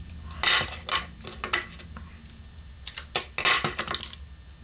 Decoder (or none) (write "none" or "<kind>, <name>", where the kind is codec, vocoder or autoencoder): none